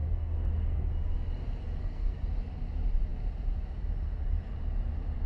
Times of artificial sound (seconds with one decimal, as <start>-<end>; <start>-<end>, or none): 0.0-0.9; 1.8-2.3